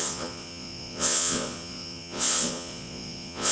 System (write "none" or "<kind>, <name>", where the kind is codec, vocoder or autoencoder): vocoder, Vocos